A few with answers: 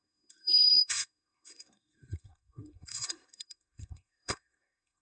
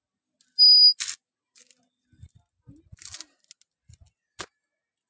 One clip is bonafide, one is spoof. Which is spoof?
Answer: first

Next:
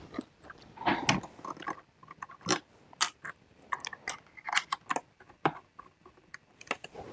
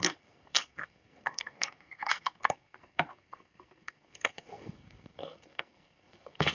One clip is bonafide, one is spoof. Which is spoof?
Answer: second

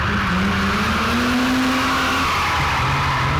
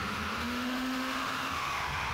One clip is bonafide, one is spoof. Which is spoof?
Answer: second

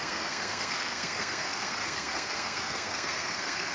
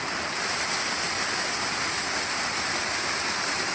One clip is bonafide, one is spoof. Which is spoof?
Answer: first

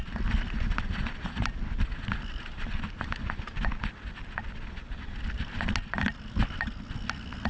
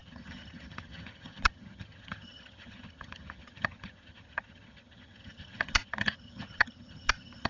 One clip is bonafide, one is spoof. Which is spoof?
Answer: second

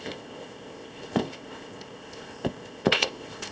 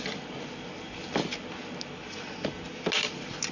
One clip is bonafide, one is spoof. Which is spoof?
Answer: first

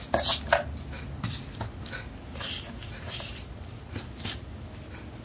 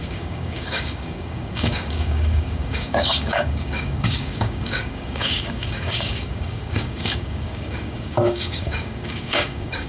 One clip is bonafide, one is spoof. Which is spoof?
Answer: second